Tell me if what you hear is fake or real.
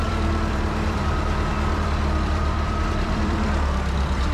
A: fake